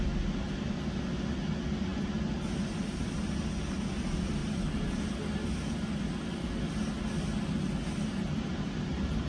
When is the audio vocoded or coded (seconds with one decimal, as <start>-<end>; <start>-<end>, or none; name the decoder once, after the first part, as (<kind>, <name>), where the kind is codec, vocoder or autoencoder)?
none